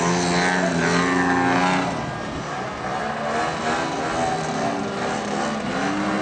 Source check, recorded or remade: recorded